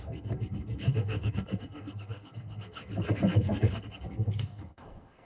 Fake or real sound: fake